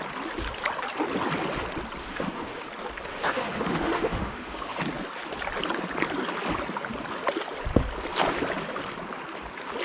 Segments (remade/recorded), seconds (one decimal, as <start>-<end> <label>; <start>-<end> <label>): 0.0-2.0 recorded; 2.0-2.7 remade; 2.7-3.1 recorded; 3.1-4.8 remade; 4.8-9.8 recorded